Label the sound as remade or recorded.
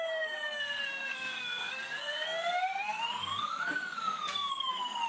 remade